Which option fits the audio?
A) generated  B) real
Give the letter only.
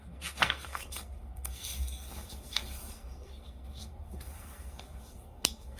A